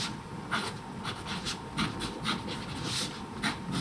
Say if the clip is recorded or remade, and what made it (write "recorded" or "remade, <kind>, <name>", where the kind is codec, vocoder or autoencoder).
recorded